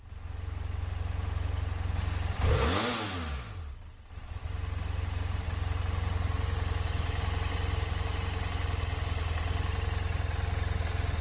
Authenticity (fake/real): real